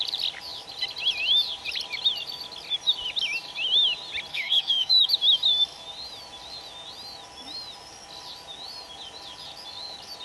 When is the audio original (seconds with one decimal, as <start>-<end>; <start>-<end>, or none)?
0.0-4.3; 5.1-10.2